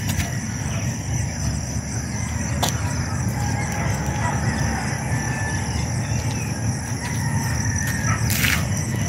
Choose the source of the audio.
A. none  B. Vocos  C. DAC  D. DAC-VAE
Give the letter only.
A